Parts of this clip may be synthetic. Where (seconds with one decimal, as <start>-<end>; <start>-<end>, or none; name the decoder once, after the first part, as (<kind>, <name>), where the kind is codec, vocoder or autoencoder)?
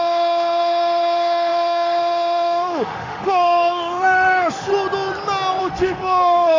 0.0-4.7 (autoencoder, DAC-VAE); 5.6-6.6